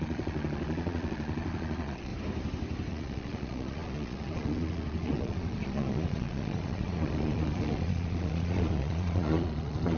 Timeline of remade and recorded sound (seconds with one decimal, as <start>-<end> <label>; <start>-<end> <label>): 0.0-2.1 remade; 2.1-2.9 recorded; 2.9-10.0 remade